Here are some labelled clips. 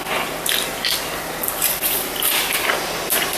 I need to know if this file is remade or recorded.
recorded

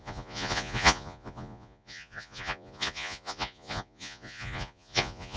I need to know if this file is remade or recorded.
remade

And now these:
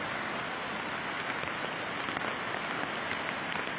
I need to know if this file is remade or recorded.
recorded